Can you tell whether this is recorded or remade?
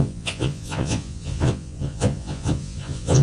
remade